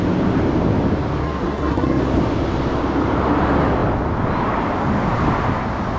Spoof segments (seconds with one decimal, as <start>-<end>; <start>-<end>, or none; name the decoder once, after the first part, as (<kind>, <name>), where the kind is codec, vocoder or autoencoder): 1.2-2.0 (codec, SNAC)

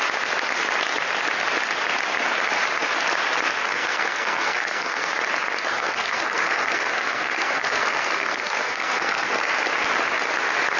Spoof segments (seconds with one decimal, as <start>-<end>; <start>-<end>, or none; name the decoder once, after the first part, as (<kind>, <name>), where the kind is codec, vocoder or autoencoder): 3.7-5.1 (codec, SNAC); 5.7-9.5

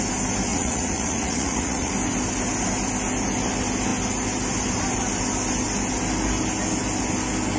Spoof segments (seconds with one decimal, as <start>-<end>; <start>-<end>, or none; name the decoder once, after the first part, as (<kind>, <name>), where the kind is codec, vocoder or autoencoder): 0.5-1.9 (vocoder, Vocos)